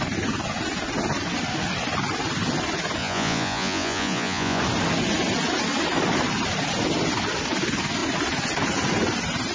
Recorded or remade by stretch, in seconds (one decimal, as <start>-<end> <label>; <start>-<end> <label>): 0.0-3.0 recorded; 3.0-4.6 remade; 4.6-9.5 recorded